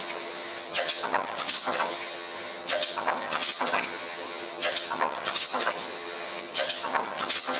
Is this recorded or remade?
remade